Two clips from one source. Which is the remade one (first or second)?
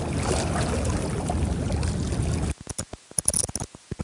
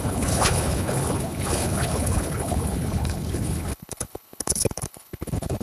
second